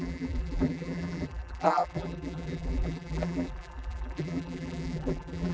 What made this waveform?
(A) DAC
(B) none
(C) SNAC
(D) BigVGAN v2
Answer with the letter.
D